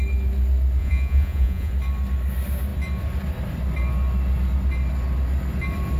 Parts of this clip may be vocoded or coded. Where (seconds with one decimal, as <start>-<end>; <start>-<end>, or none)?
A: 0.8-1.7